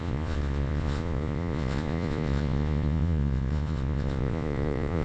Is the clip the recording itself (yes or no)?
no